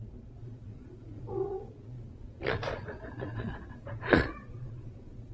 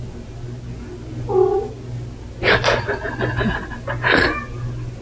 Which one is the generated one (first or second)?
first